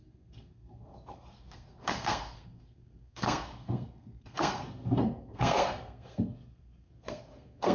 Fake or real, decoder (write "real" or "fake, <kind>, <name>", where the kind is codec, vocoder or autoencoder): fake, codec, SNAC